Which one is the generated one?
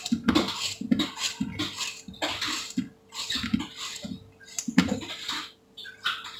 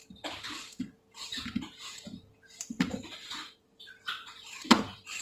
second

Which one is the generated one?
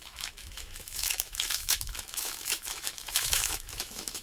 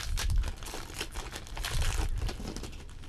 first